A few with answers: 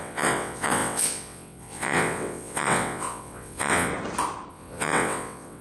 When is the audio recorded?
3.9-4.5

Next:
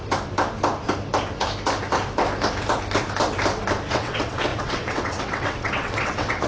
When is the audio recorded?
0.0-3.9